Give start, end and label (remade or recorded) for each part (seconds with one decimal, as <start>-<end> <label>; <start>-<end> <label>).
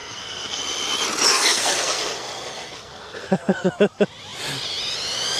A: 0.0-0.6 remade; 0.6-1.3 recorded; 1.3-3.7 remade; 3.7-5.4 recorded